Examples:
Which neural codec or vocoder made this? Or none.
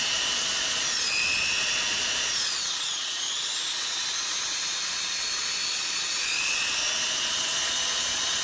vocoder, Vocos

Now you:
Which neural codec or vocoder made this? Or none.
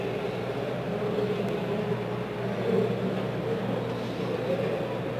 none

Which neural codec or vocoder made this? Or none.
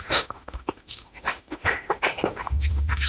autoencoder, DAC-VAE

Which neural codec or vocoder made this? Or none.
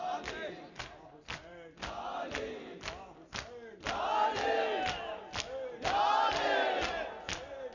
none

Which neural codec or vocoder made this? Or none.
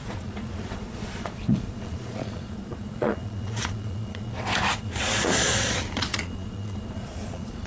vocoder, Vocos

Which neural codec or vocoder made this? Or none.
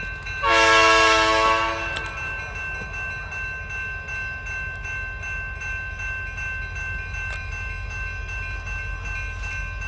none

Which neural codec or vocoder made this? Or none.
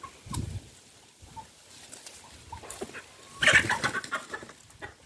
none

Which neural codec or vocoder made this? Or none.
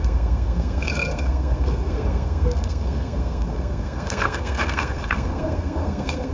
codec, SNAC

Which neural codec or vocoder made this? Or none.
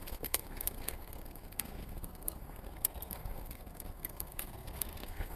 codec, SNAC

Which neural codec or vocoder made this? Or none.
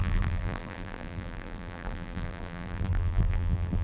vocoder, BigVGAN v2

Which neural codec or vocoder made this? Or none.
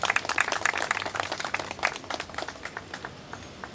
none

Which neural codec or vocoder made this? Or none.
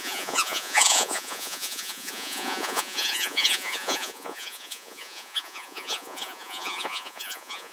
vocoder, Vocos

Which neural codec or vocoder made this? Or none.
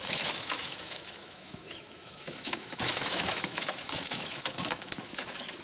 autoencoder, DAC-VAE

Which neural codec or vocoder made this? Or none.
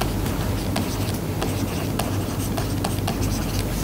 none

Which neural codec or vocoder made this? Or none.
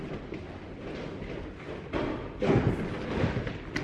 none